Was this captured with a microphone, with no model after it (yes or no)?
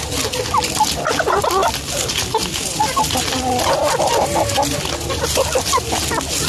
yes